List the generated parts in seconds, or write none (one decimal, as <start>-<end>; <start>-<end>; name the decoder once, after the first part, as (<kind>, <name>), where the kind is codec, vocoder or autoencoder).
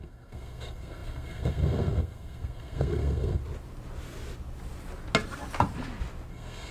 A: 0.0-3.4 (codec, SNAC); 6.3-6.7